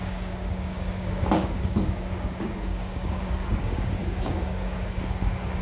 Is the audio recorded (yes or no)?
no